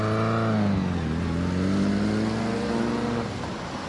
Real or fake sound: real